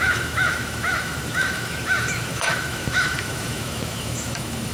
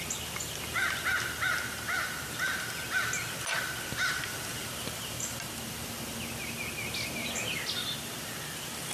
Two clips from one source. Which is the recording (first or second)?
second